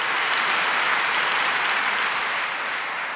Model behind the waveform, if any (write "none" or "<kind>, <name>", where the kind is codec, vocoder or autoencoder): none